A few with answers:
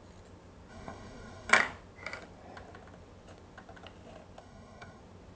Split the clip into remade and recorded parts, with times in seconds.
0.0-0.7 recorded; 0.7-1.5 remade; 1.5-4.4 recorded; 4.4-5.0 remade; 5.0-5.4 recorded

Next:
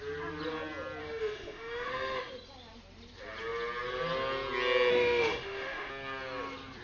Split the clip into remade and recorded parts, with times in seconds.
0.0-1.0 recorded; 1.0-2.3 remade; 2.3-4.9 recorded; 4.9-5.9 remade; 5.9-6.8 recorded

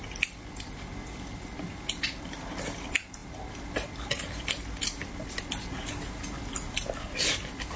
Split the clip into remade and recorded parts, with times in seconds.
0.0-7.8 recorded

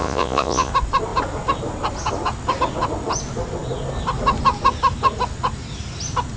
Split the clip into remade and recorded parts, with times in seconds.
0.0-0.7 remade; 0.7-6.4 recorded